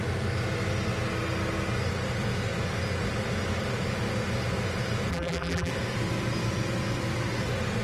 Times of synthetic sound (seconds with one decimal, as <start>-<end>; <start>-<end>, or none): 5.1-5.7